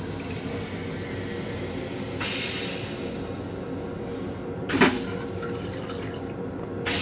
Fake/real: real